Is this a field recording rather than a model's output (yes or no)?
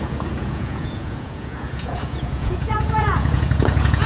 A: no